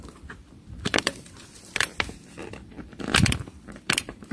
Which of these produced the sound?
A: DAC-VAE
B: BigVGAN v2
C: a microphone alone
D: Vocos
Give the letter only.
B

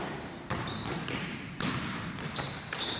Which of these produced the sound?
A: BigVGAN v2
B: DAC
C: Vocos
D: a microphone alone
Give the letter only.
A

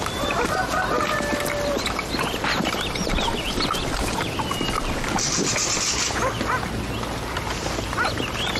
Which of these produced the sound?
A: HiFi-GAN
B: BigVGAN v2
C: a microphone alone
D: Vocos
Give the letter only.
C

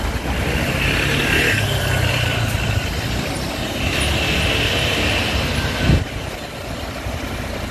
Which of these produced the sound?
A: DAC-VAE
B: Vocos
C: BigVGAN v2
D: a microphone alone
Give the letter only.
D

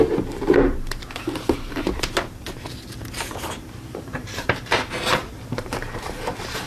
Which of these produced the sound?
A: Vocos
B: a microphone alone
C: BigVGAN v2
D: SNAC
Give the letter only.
C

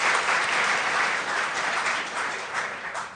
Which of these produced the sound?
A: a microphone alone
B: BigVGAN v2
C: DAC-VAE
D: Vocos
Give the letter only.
B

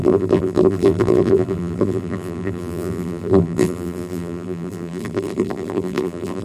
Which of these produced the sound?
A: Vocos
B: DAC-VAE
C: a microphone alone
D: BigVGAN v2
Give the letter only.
D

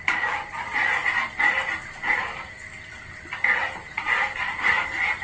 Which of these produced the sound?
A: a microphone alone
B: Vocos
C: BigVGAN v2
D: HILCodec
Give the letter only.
C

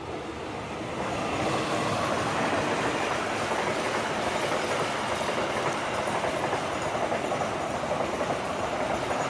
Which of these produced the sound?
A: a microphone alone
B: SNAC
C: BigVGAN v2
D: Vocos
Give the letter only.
A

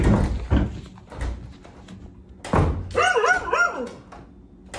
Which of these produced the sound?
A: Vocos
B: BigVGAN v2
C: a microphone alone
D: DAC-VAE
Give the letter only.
C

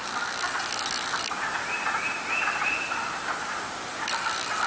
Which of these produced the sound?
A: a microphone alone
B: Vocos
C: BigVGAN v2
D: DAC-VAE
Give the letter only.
A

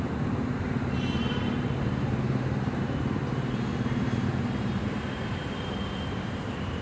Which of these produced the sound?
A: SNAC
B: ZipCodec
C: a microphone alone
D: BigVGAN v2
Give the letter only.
D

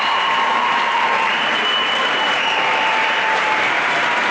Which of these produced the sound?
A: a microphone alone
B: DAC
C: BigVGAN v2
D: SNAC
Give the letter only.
C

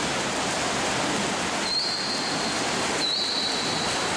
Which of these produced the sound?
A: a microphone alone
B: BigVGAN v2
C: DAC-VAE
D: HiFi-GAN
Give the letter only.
A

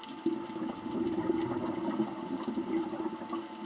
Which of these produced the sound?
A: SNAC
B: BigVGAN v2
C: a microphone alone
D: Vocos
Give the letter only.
C